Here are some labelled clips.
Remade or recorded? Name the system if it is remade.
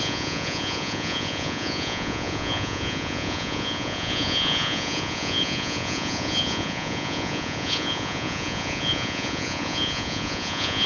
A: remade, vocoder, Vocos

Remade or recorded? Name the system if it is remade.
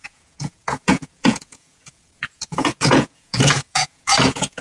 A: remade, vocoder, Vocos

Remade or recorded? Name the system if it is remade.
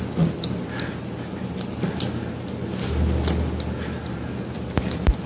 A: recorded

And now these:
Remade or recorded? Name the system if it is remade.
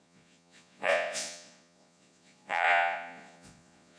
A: remade, vocoder, Vocos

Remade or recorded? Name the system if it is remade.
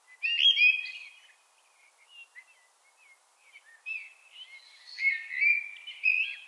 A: recorded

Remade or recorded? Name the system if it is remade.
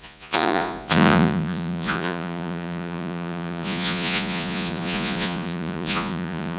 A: remade, vocoder, Vocos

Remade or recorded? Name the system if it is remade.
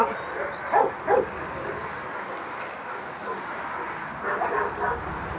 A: recorded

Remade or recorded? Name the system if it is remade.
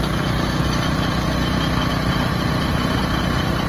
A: recorded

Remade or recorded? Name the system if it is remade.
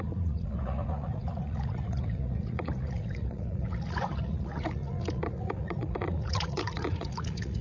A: remade, vocoder, Vocos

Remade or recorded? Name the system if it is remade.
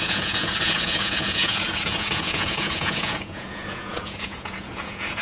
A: remade, vocoder, Vocos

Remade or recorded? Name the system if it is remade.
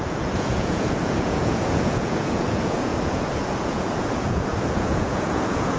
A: remade, vocoder, Vocos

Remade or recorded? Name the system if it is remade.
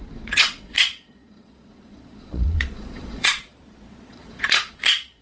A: remade, vocoder, Vocos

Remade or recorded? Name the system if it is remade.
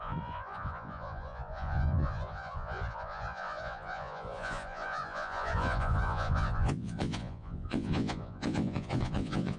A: remade, vocoder, Vocos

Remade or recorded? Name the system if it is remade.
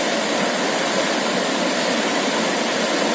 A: recorded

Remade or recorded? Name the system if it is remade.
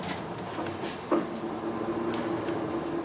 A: recorded